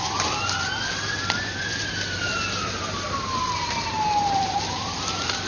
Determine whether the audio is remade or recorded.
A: remade